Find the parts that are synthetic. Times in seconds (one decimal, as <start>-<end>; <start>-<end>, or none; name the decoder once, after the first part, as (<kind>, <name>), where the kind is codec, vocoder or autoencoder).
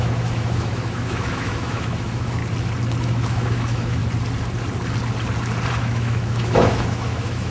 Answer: 0.0-2.4 (autoencoder, DAC-VAE); 3.0-4.0; 5.7-7.5